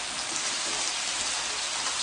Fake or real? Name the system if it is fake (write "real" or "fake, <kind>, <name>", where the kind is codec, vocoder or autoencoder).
real